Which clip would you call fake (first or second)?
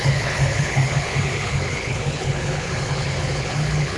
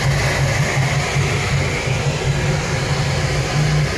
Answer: first